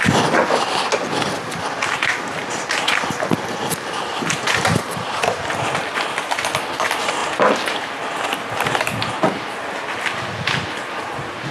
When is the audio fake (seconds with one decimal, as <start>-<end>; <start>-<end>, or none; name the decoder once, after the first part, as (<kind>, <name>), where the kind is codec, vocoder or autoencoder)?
none